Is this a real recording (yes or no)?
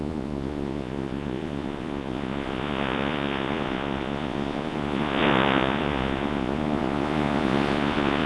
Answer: no